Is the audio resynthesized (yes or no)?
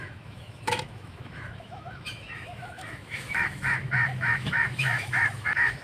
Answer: yes